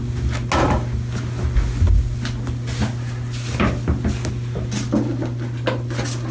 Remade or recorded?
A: recorded